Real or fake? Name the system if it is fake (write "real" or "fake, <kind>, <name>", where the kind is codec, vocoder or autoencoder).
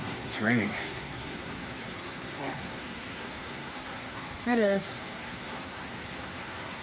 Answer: fake, codec, SNAC